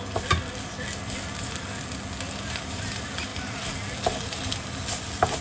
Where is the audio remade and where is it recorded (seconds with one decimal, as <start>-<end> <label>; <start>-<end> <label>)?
0.0-5.4 recorded